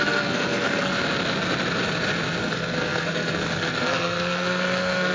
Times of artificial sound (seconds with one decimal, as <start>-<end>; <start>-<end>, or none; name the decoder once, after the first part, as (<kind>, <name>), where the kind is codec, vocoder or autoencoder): 0.0-0.9 (codec, SNAC); 2.4-5.1